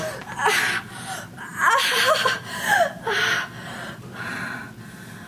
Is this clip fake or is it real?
real